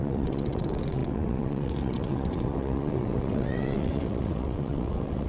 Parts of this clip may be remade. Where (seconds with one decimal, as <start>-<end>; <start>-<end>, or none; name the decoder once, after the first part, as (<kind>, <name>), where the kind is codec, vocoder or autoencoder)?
0.0-5.3 (vocoder, WaveNeXt)